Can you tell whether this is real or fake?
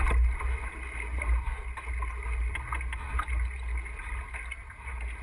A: real